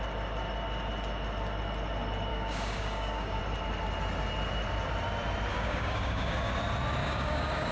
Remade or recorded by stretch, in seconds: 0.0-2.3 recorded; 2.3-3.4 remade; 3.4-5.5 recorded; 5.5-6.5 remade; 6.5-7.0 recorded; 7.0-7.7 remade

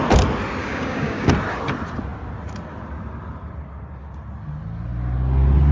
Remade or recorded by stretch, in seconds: 0.0-0.6 recorded; 0.6-1.3 remade; 1.3-5.7 recorded

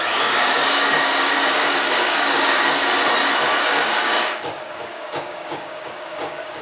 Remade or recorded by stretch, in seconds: 0.0-2.8 remade; 2.8-3.6 recorded; 3.6-6.6 remade

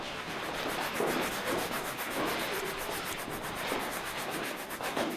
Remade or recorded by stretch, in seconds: 0.0-0.4 remade; 0.4-1.3 recorded; 1.3-2.2 remade; 2.2-3.8 recorded; 3.8-5.2 remade